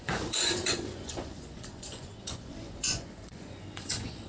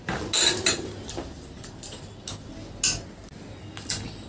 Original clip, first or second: second